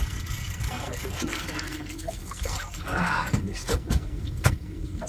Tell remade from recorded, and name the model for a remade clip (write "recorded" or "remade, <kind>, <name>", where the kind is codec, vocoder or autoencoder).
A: remade, codec, SNAC